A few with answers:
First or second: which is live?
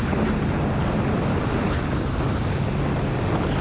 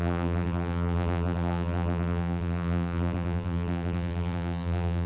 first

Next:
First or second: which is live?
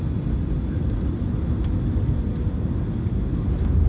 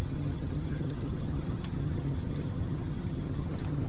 first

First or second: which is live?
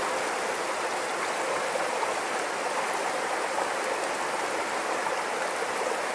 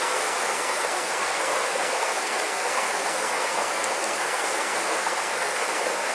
first